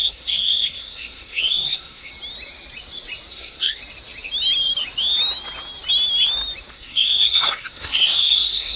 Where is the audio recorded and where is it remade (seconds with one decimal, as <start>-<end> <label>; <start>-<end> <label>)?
0.0-2.1 remade; 2.1-3.3 recorded; 3.3-3.8 remade; 3.8-6.7 recorded; 6.7-8.8 remade